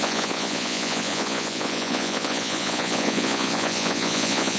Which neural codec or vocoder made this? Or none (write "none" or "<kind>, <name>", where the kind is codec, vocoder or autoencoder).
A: vocoder, Vocos